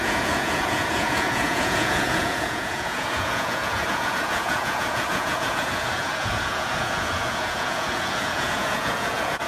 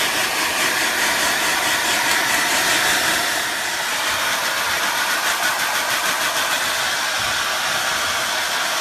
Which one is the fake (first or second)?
first